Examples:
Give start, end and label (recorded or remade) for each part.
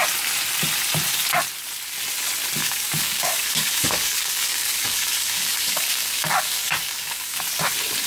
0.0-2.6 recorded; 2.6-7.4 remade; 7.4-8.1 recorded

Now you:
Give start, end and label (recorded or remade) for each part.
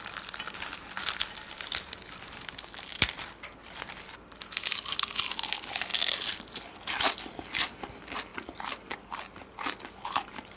0.0-10.6 recorded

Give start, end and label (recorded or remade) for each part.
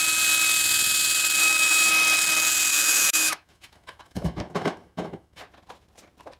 0.0-1.4 recorded; 1.4-1.9 remade; 1.9-2.7 recorded; 2.7-5.4 remade; 5.4-6.4 recorded